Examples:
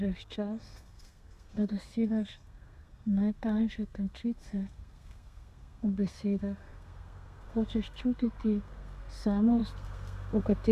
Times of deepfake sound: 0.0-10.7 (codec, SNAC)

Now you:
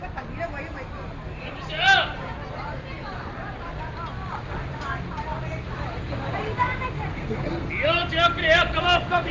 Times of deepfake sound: 7.1-7.7 (codec, SNAC)

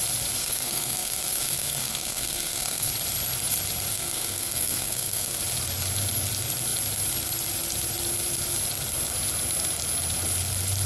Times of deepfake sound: 0.4-2.9 (codec, SNAC); 3.9-5.4

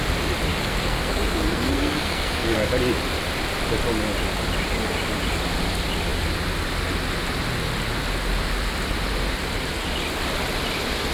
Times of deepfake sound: 0.5-2.7 (codec, SNAC)

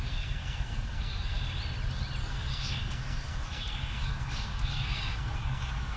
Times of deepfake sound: 0.0-1.4 (codec, SNAC); 2.2-6.0

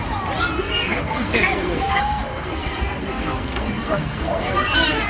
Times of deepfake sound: 0.6-5.1 (codec, SNAC)

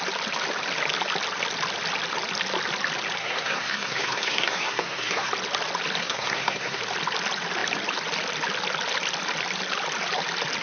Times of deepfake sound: 3.2-5.3 (codec, SNAC); 6.0-6.8

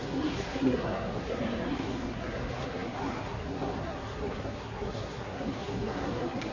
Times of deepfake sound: 0.0-6.5 (codec, SNAC)